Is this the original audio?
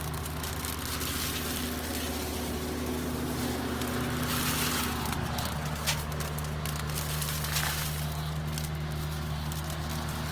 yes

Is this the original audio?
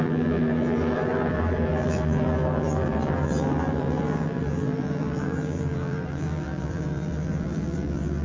no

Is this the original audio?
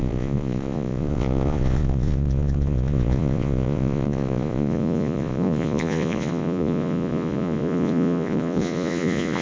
no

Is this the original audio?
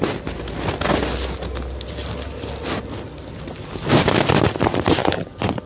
yes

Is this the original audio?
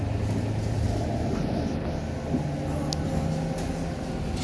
yes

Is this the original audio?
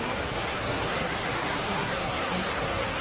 no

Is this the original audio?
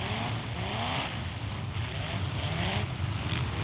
no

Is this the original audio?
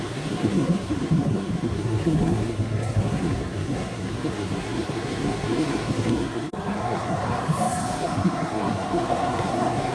no